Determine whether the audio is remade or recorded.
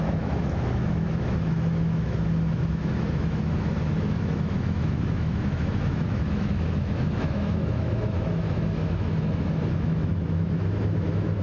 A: remade